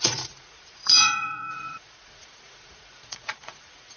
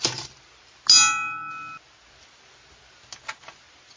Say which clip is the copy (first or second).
first